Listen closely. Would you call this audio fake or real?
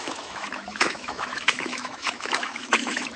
fake